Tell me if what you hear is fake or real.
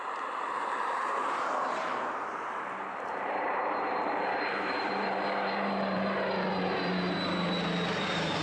fake